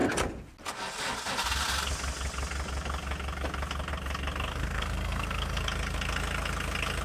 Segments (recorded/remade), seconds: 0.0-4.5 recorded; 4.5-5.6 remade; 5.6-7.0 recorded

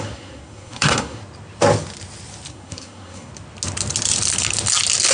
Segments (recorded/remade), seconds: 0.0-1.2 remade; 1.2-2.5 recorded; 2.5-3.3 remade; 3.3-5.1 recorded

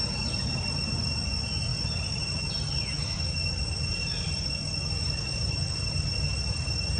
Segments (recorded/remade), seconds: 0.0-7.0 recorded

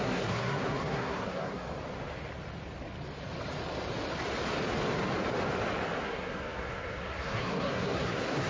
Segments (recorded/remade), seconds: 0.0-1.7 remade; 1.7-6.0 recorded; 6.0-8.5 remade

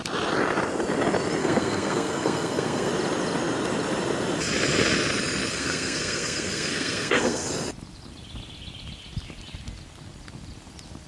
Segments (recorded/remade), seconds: 0.0-1.4 recorded; 1.4-2.9 remade; 2.9-5.5 recorded; 5.5-7.5 remade; 7.5-11.1 recorded

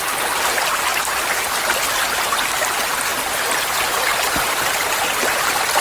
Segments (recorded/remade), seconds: 0.0-5.8 recorded

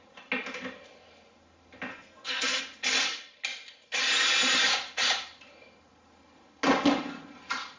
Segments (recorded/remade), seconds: 0.0-1.9 recorded; 1.9-2.6 remade; 2.6-7.8 recorded

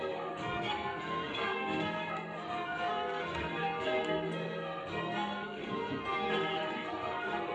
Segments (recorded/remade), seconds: 0.0-7.5 remade